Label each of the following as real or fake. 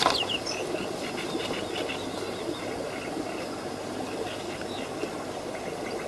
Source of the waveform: real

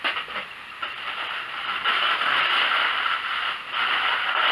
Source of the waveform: real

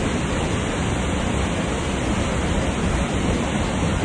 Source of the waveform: real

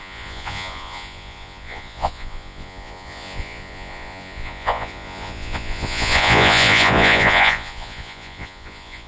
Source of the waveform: fake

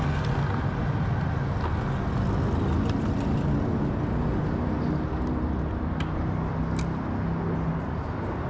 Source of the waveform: real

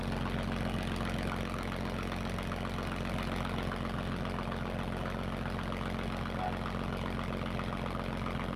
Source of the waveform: real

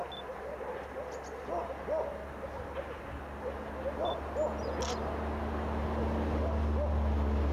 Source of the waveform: real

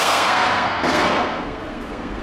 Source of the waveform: fake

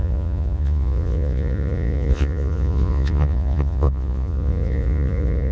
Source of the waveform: fake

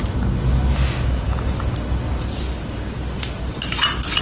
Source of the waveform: real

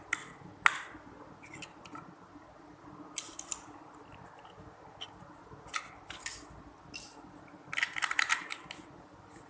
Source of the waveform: real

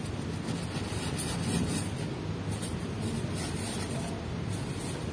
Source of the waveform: real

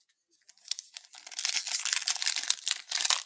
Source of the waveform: real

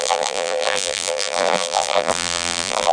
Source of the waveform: fake